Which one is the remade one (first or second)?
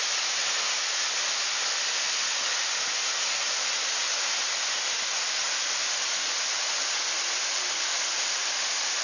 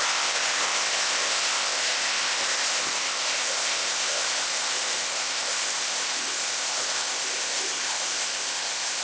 second